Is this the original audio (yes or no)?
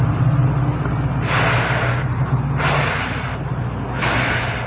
yes